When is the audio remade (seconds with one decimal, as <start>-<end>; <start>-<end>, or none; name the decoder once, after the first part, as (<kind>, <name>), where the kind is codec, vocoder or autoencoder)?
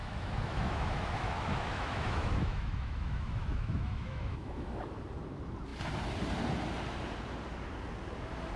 0.0-4.8 (autoencoder, DAC-VAE)